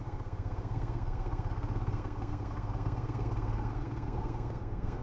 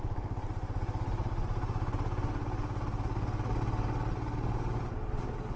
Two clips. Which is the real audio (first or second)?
second